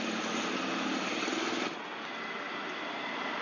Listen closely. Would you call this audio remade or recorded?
recorded